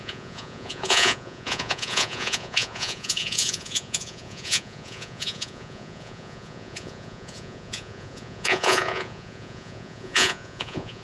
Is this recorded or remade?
remade